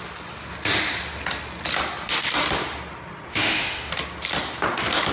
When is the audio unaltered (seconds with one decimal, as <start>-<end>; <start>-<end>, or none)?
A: 0.0-3.3; 3.9-5.1